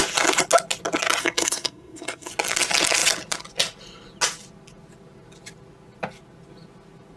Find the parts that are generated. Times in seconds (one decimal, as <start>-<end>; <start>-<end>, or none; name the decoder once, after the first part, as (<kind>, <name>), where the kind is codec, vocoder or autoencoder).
1.2-2.3 (codec, SNAC)